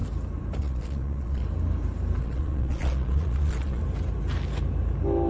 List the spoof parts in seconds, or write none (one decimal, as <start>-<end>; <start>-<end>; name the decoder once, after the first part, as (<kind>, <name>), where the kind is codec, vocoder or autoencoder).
0.6-1.4 (vocoder, Vocos); 2.2-3.8